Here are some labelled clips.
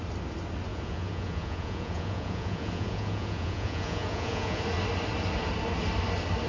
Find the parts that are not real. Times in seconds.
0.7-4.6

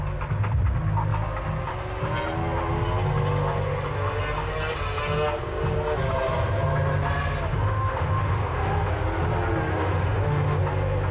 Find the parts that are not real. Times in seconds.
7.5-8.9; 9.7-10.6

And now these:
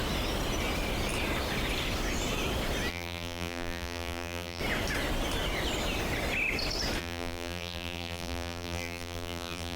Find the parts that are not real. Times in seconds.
2.9-4.6; 7.0-9.8